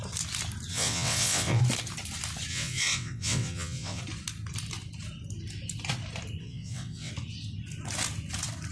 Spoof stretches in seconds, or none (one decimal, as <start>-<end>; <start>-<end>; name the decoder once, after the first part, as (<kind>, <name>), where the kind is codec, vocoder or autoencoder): 0.7-1.6 (vocoder, WaveNeXt); 2.5-4.0; 6.4-7.1